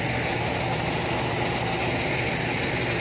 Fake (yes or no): no